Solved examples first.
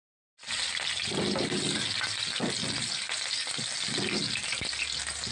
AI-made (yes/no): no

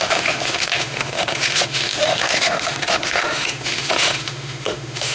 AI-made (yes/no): yes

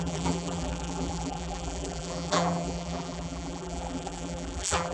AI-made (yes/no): yes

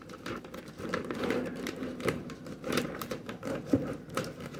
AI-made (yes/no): yes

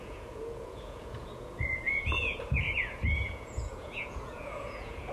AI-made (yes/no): yes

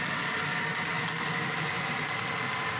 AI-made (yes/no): no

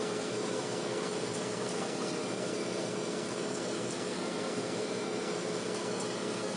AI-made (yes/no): yes